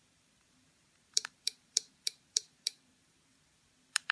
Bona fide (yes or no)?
no